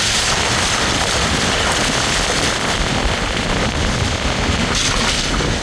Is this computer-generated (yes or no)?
no